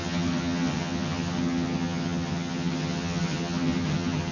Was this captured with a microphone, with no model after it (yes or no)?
no